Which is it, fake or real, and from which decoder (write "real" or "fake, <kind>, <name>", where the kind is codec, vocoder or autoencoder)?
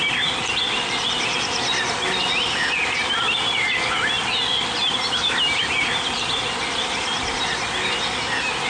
real